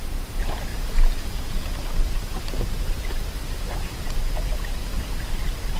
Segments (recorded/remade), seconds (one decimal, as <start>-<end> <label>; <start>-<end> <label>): 0.0-5.8 remade